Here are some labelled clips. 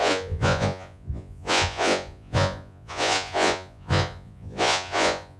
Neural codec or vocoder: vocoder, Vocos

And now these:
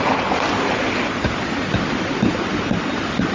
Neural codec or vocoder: none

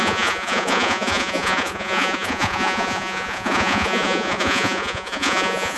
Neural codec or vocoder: vocoder, Vocos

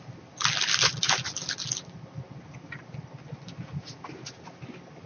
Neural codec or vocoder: none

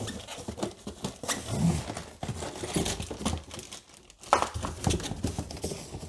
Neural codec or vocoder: none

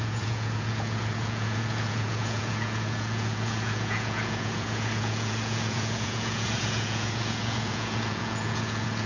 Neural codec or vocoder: vocoder, Vocos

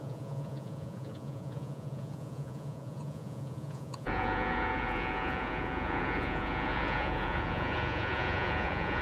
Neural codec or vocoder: vocoder, Vocos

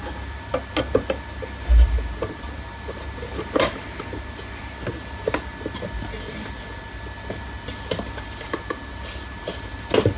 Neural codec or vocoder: none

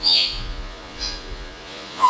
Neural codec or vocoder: vocoder, Vocos